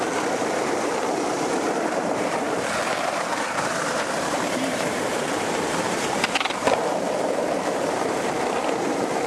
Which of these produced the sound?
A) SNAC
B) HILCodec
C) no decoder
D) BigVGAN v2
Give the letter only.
D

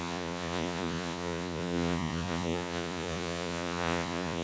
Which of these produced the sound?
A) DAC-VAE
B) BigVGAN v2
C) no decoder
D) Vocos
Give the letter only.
D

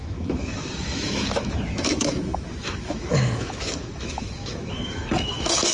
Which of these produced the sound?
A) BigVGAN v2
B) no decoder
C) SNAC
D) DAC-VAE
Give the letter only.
D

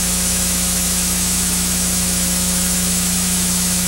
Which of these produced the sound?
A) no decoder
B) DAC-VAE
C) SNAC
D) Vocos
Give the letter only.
B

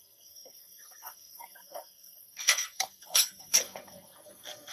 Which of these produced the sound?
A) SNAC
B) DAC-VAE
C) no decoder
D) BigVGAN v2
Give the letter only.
A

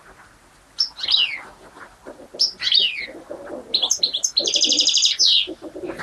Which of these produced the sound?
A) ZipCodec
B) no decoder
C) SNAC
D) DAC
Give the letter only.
B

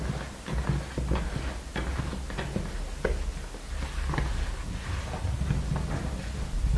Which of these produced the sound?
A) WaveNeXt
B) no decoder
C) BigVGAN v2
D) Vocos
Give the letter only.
B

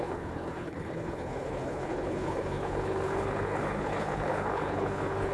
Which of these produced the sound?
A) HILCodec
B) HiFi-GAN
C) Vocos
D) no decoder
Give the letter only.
A